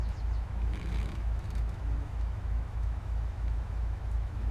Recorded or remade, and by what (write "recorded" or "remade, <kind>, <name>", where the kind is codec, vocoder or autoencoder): remade, autoencoder, DAC-VAE